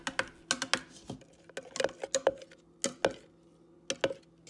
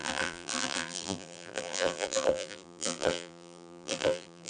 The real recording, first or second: first